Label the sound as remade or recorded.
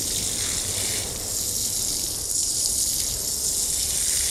recorded